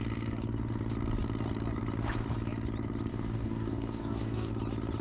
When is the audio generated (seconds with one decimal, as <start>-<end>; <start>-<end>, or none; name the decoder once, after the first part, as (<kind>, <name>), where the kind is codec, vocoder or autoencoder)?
3.1-4.5 (codec, DAC)